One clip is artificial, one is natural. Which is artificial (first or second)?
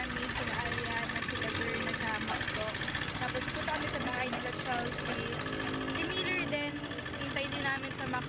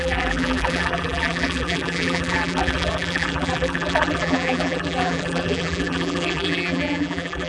second